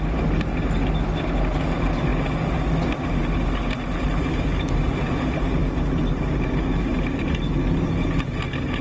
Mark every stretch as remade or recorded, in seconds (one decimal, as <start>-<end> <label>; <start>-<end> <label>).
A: 0.0-8.8 recorded